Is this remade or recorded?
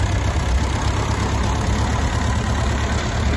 recorded